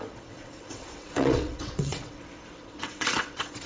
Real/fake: fake